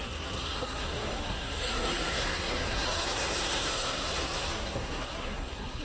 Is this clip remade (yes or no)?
yes